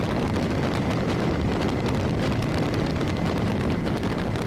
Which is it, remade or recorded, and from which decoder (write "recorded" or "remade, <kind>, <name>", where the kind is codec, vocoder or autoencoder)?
remade, vocoder, BigVGAN v2